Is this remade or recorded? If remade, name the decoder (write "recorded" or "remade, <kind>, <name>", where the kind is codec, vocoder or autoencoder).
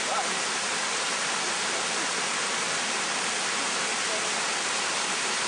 recorded